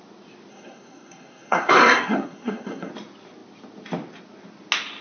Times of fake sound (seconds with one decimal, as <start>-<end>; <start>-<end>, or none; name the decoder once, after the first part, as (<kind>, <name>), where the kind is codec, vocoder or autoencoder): 0.5-2.9 (codec, SNAC)